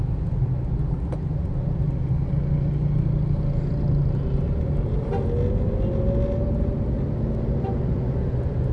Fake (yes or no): no